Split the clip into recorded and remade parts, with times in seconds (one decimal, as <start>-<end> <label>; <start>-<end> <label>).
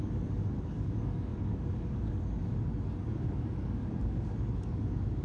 0.0-5.2 remade